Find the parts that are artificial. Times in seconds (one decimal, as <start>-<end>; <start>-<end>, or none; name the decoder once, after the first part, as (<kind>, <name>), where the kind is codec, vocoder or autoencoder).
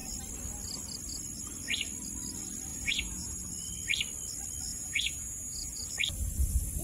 2.7-3.5 (vocoder, Vocos); 4.7-5.9